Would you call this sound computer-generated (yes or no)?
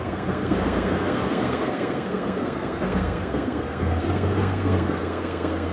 yes